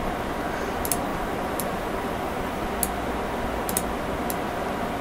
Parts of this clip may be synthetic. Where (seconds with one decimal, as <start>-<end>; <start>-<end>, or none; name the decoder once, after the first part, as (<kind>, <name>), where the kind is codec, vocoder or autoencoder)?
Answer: 1.1-2.7 (vocoder, BigVGAN v2)